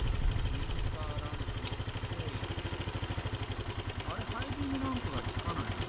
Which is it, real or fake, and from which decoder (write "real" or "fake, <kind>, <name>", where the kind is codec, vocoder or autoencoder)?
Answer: real